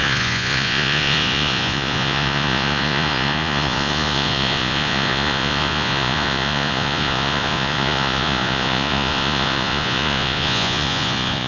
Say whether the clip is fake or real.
fake